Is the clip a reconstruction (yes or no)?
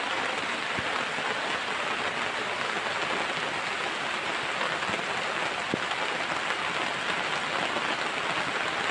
no